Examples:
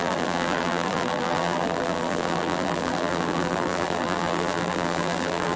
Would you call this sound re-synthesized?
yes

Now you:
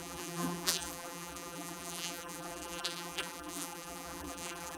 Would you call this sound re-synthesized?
yes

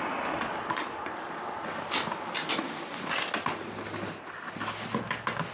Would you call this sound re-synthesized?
no